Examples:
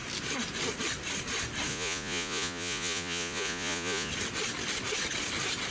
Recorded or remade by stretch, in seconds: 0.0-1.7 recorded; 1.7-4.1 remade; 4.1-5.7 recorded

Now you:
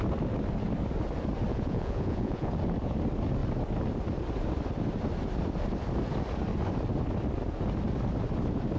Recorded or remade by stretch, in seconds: 0.0-1.5 recorded; 1.5-2.5 remade; 2.5-8.8 recorded

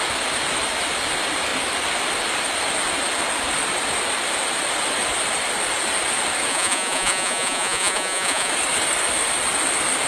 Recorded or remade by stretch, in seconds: 0.0-6.5 recorded; 6.5-8.5 remade; 8.5-10.1 recorded

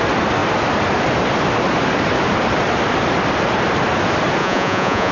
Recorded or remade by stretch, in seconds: 0.0-4.4 recorded; 4.4-5.1 remade

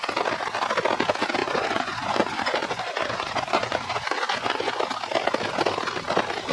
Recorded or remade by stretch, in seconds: 0.0-1.4 recorded; 1.4-4.8 remade; 4.8-6.5 recorded

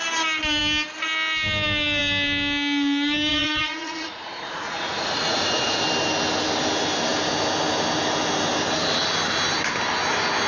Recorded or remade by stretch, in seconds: 0.0-3.3 recorded; 3.3-5.8 remade; 5.8-10.5 recorded